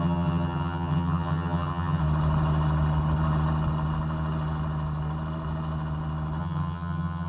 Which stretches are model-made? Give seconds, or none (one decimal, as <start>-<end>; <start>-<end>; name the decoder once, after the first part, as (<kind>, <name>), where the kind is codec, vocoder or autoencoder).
0.0-2.0 (vocoder, HiFi-GAN); 6.4-7.3

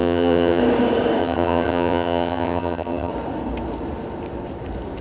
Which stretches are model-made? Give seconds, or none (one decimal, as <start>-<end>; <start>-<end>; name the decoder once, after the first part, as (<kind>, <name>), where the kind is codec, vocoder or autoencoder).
0.0-0.6 (vocoder, HiFi-GAN); 1.2-3.1

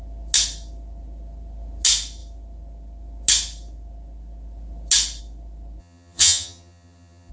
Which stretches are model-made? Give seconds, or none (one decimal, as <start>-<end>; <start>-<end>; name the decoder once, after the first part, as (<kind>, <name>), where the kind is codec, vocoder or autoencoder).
5.8-7.3 (vocoder, HiFi-GAN)